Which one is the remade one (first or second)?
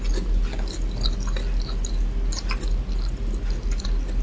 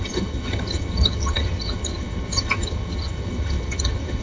second